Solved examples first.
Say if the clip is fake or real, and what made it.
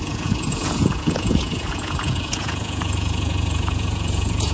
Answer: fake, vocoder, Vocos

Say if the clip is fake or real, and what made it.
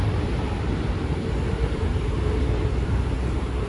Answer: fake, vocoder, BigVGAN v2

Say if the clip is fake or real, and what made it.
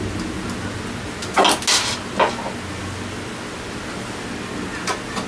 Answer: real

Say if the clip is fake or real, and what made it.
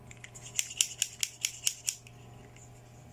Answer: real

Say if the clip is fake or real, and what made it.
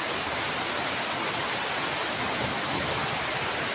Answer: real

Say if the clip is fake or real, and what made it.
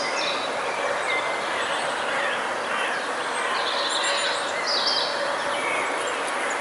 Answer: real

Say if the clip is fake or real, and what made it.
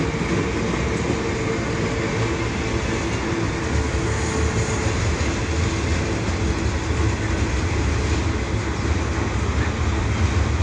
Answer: real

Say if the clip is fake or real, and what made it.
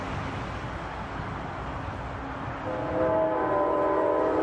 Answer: real